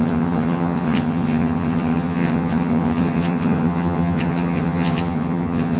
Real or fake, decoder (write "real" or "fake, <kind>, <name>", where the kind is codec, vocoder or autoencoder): fake, vocoder, HiFi-GAN